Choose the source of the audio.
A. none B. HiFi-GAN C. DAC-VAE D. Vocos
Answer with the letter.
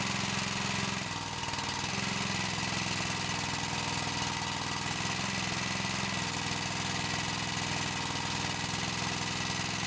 A